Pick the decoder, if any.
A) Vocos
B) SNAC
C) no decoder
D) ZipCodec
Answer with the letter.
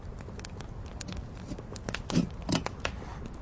C